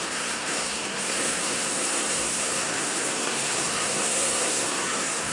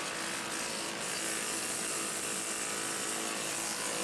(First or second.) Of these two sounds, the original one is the second